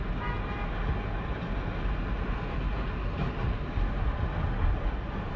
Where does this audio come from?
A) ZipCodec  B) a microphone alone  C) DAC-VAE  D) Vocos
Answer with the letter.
B